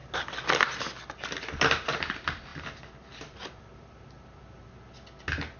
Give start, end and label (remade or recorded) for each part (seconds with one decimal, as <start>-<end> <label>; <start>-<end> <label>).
0.0-0.6 remade; 0.6-2.5 recorded; 2.5-4.5 remade; 4.5-5.6 recorded